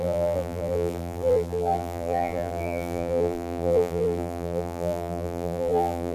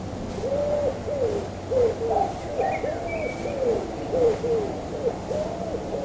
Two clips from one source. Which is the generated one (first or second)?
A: first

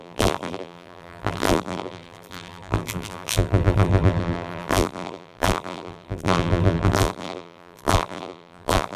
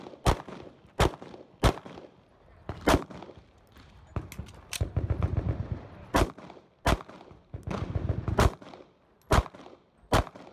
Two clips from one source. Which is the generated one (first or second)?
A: first